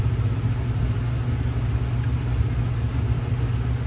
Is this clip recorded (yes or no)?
yes